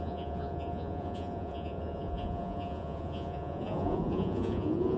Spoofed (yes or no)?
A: yes